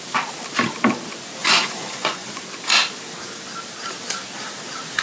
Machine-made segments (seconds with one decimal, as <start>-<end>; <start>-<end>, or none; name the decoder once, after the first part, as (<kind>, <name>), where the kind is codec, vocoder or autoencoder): 1.4-2.4 (vocoder, Vocos)